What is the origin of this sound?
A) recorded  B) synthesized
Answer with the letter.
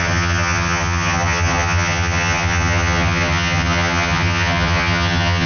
B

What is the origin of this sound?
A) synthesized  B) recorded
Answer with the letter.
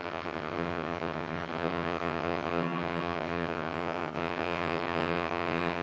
A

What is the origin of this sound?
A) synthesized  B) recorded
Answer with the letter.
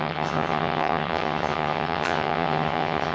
A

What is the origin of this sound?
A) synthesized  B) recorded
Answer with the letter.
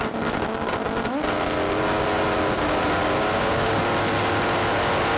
B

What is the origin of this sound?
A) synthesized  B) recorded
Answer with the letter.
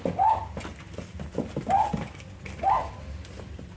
B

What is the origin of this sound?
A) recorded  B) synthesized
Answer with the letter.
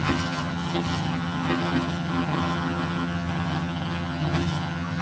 B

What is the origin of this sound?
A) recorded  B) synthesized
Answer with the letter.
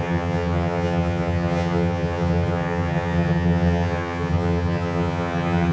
B